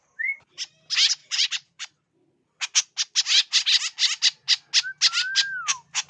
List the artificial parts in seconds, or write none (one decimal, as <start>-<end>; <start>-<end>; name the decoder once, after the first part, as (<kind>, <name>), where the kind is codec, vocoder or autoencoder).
1.2-2.1 (vocoder, Vocos)